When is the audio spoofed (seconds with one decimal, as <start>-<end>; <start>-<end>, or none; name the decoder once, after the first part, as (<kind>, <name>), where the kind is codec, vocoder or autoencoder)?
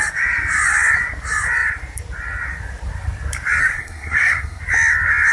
3.6-4.6 (codec, SNAC)